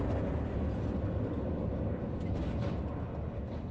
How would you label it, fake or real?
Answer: real